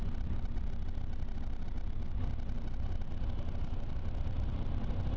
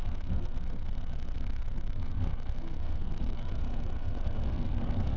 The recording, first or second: first